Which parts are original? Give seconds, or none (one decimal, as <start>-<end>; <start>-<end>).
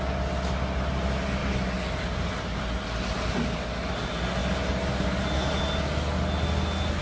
0.0-7.0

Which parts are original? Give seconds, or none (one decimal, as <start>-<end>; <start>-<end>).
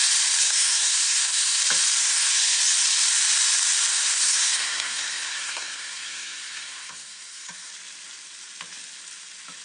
0.0-0.4; 1.6-2.0; 2.6-3.9; 7.7-9.6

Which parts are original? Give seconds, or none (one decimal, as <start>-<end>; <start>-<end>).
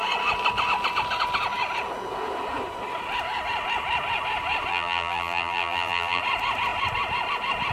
0.0-4.7; 6.2-7.7